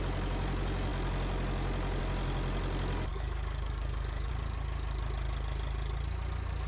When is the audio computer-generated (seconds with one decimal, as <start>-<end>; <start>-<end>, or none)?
3.1-4.3